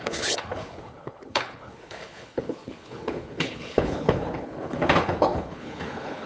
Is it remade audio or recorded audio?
remade